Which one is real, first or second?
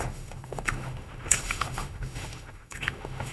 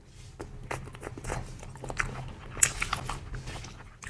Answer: second